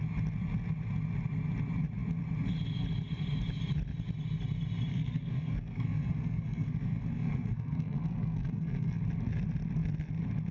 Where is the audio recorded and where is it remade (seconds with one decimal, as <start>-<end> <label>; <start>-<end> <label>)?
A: 0.0-4.9 recorded; 4.9-9.0 remade; 9.0-10.5 recorded